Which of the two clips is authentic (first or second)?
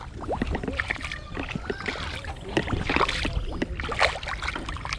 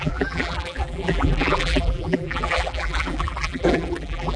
first